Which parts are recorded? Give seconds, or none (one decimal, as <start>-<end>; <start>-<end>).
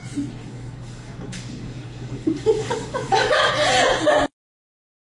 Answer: 0.0-0.4; 3.5-5.2